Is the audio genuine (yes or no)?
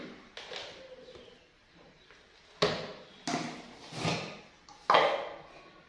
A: yes